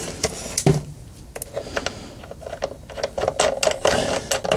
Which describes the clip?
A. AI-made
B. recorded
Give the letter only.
B